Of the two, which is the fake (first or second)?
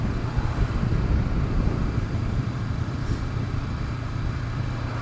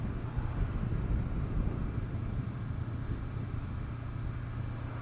first